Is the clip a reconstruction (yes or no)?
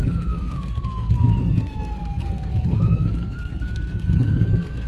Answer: yes